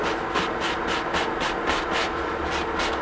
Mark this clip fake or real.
real